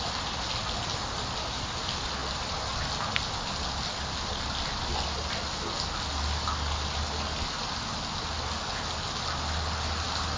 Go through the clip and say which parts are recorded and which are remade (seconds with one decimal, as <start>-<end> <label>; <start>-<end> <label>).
0.0-10.4 recorded